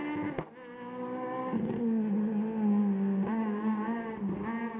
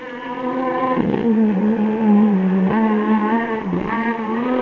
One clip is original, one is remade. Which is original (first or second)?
first